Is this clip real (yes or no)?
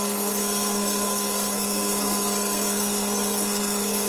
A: no